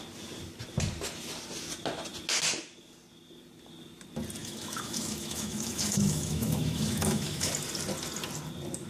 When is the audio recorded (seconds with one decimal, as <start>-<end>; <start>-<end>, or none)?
0.0-4.4; 7.5-8.9

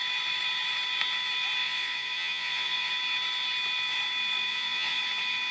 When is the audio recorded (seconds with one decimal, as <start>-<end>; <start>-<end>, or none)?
0.0-1.6; 2.9-4.5; 5.0-5.5

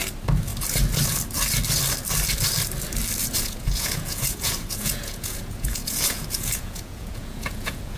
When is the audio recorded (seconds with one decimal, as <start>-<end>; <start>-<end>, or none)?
0.0-3.2

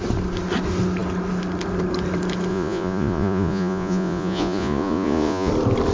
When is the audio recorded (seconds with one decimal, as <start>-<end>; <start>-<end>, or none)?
0.0-2.5; 5.5-5.9

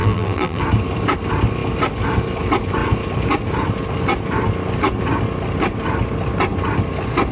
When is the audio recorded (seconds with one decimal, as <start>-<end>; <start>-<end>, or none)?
0.6-7.3

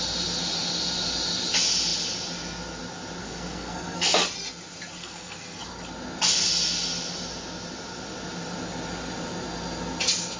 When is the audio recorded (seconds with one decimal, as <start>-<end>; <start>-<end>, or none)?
0.0-3.2; 4.2-5.0; 5.7-10.4

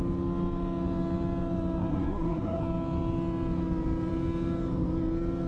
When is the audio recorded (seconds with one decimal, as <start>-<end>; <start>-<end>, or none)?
0.0-1.9; 2.6-5.5